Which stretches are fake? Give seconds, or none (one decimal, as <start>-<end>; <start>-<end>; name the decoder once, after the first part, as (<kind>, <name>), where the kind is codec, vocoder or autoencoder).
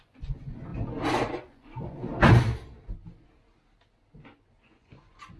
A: 0.0-0.7 (vocoder, Vocos); 1.3-2.0; 4.6-5.4